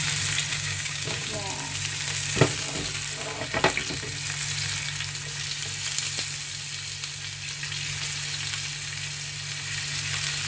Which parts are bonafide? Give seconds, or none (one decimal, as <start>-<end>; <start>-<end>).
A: 0.0-0.5; 1.3-10.5